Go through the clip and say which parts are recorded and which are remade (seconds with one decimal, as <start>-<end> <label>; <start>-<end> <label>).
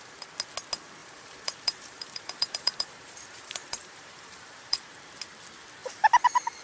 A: 0.0-1.0 recorded; 1.0-5.0 remade; 5.0-5.8 recorded; 5.8-6.6 remade